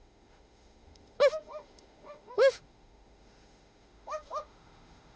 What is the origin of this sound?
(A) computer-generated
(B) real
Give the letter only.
A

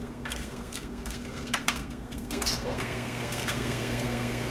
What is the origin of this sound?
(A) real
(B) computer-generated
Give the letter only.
B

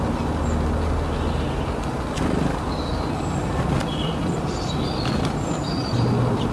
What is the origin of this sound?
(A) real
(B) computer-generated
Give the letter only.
A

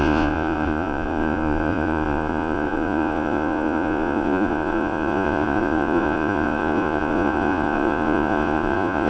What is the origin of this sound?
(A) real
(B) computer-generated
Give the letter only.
B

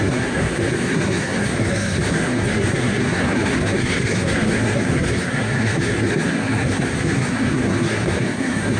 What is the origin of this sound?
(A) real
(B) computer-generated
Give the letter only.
B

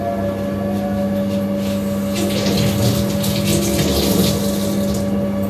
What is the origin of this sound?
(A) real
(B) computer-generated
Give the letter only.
A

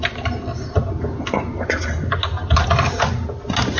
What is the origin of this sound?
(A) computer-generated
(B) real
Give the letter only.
B